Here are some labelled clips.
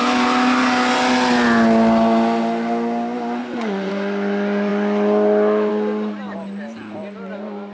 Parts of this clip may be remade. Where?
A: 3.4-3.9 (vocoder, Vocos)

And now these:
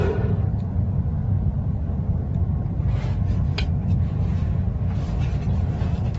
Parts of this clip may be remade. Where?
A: none